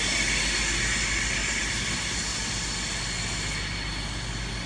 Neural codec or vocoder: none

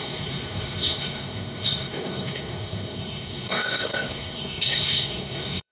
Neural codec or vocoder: codec, SNAC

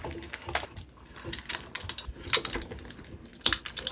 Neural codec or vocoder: none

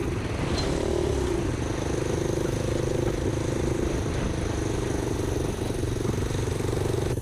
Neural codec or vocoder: none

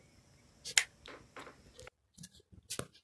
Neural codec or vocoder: none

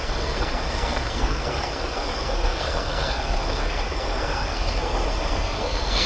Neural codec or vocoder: codec, SNAC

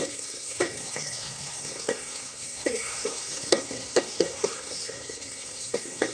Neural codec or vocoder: codec, SNAC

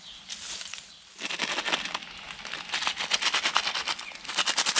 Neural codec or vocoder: none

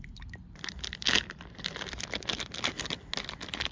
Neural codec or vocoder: none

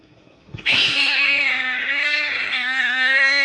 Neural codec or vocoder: codec, SNAC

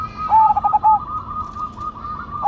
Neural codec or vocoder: none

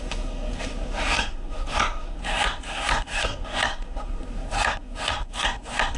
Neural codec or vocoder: codec, SNAC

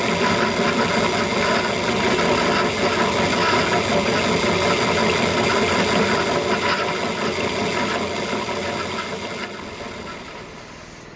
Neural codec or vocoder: none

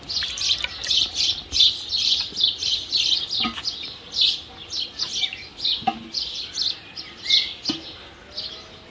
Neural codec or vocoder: none